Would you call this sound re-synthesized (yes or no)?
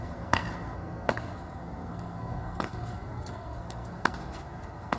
yes